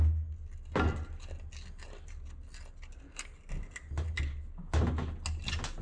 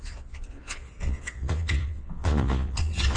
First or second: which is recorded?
first